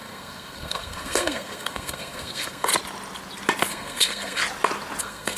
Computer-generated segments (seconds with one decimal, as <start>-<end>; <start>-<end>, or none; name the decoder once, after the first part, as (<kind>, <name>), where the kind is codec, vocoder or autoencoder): 0.0-2.7 (codec, SNAC); 3.7-4.4; 5.0-5.4